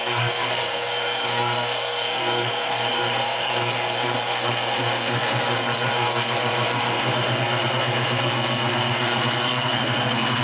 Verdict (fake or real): fake